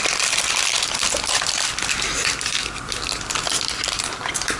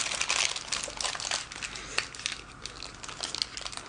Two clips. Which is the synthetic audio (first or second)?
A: first